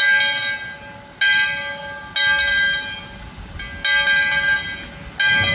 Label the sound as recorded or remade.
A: recorded